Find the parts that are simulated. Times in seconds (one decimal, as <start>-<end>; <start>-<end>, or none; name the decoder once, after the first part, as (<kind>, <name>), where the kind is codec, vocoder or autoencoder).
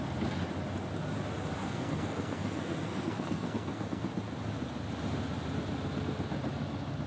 1.6-4.0 (codec, SNAC)